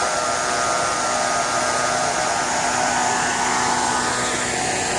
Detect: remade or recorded recorded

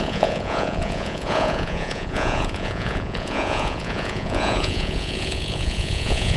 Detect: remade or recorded remade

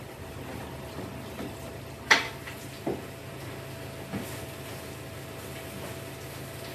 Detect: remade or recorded recorded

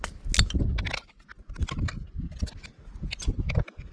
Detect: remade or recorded recorded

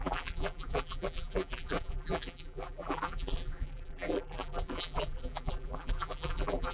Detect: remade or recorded remade